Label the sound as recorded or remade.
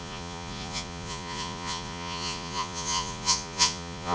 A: remade